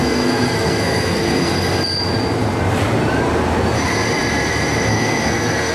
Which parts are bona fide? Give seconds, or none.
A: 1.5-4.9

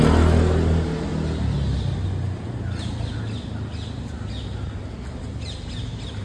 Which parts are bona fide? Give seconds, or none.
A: 0.0-6.2

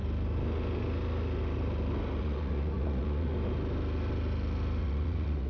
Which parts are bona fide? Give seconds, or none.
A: 0.0-2.2; 3.3-4.8

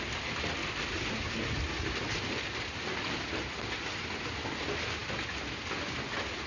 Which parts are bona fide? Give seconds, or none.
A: 0.0-6.5

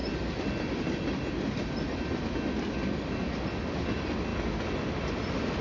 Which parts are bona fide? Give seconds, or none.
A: 0.0-5.6

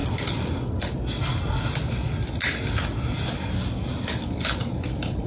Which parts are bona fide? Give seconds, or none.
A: 0.0-5.3

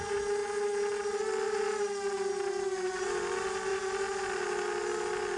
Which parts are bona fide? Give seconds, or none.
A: 0.0-5.4

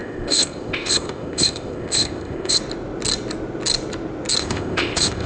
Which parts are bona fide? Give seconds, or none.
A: 2.6-4.4